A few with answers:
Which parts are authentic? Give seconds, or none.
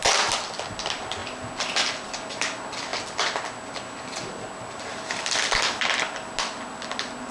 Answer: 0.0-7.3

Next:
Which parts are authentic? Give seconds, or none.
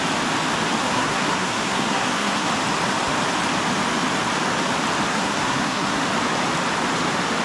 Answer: 0.0-0.8; 2.5-5.1; 6.0-7.4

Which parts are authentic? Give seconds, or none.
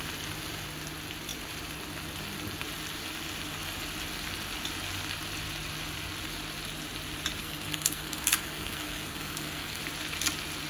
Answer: 0.0-7.4; 9.8-10.7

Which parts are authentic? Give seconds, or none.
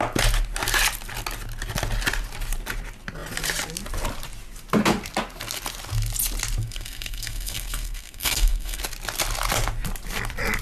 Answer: 0.0-6.6; 8.8-10.6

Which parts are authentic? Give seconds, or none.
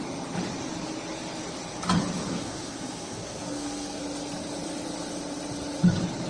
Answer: 0.0-2.2; 4.0-6.3